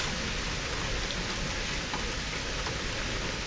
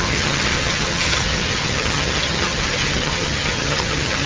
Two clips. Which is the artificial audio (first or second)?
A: second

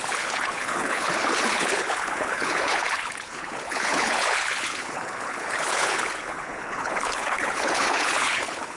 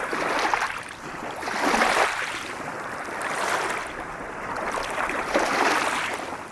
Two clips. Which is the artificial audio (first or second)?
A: first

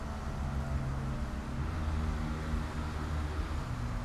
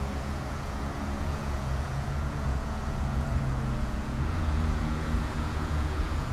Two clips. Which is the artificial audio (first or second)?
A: second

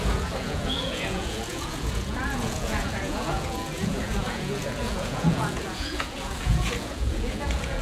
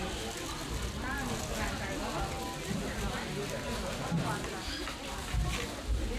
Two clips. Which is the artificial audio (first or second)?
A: first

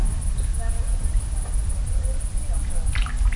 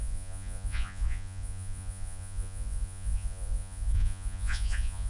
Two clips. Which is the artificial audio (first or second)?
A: second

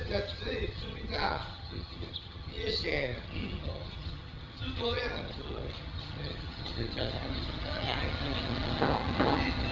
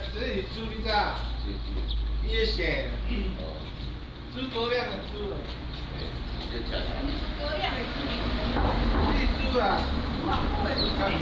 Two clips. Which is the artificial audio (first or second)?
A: first